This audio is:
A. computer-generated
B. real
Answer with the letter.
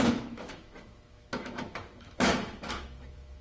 A